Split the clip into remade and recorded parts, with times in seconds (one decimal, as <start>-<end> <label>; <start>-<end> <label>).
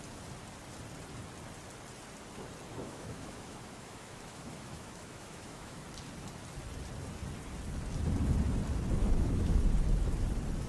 0.0-2.7 recorded; 2.7-5.8 remade; 5.8-9.0 recorded; 9.0-9.6 remade; 9.6-10.7 recorded